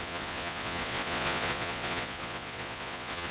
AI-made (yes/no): yes